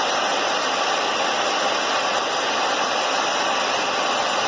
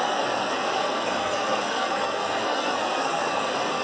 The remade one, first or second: second